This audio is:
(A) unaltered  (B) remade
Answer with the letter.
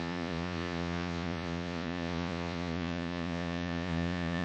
B